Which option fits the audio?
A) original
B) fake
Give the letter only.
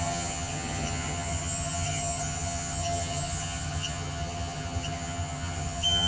B